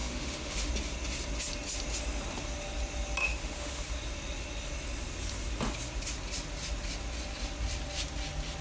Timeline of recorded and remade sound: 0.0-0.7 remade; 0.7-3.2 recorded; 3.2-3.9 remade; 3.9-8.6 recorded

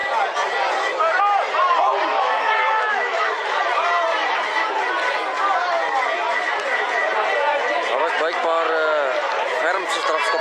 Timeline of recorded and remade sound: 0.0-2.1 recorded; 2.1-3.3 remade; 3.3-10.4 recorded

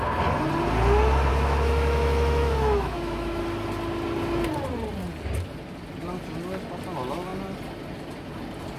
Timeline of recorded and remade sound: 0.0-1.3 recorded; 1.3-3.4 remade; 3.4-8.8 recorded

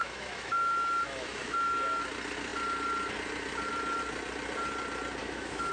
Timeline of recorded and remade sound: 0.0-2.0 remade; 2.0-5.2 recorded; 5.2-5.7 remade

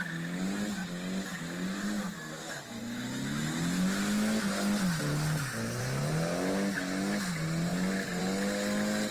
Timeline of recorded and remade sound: 0.0-9.1 recorded

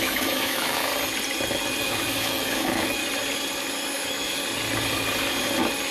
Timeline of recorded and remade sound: 0.0-0.9 remade; 0.9-1.8 recorded; 1.8-3.0 remade; 3.0-3.9 recorded; 3.9-4.4 remade; 4.4-5.9 recorded

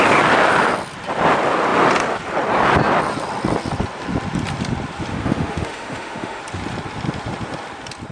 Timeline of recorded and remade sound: 0.0-5.1 recorded; 5.1-6.4 remade; 6.4-8.1 recorded